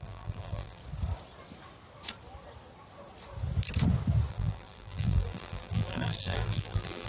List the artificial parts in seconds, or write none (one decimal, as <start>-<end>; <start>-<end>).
0.0-0.8; 4.3-7.1